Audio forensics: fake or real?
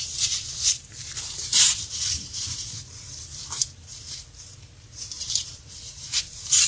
fake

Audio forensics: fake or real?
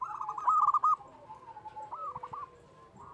fake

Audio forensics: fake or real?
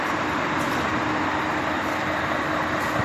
real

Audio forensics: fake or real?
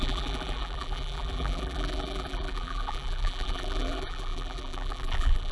fake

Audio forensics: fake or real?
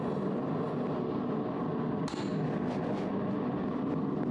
real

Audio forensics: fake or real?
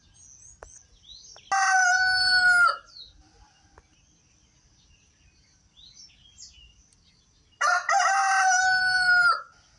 real